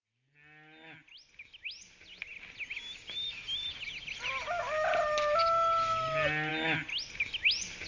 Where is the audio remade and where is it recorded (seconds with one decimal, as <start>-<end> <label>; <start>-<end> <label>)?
0.0-7.9 recorded